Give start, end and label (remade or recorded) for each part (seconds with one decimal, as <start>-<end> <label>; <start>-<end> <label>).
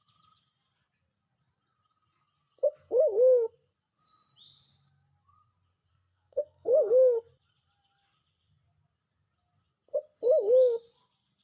0.0-5.9 recorded; 5.9-6.9 remade; 6.9-11.4 recorded